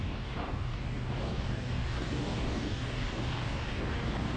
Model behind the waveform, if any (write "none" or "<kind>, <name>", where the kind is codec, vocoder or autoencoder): codec, DAC